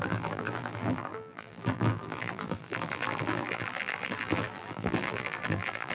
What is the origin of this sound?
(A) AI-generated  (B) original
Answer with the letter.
A